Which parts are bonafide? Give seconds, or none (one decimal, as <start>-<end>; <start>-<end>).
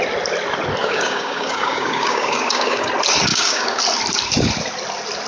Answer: 0.0-0.8; 2.9-3.3; 3.8-5.3